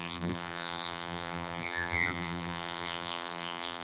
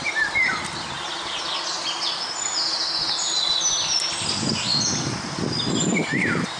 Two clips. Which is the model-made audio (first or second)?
first